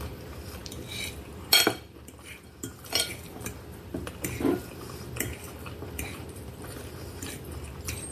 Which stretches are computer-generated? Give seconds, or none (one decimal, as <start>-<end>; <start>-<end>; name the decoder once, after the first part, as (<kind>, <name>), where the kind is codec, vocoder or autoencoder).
0.0-8.1 (vocoder, BigVGAN v2)